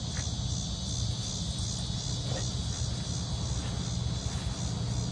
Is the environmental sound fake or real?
real